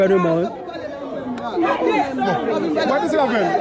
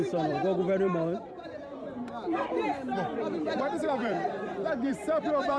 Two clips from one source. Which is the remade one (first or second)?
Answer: second